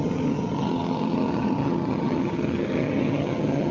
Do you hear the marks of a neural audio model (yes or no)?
yes